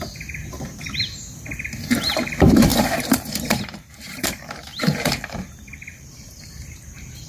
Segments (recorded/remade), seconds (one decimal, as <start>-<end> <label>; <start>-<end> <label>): 0.0-7.3 remade